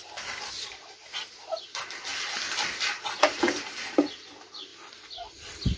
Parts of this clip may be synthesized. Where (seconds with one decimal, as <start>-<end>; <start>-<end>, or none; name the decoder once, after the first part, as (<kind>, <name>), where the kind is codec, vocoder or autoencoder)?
none